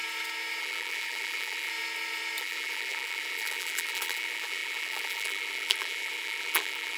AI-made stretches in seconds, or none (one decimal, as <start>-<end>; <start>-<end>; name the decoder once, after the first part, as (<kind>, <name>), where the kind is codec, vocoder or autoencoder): 0.6-1.7 (vocoder, BigVGAN v2); 2.4-7.0